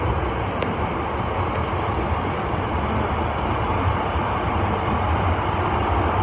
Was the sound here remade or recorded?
recorded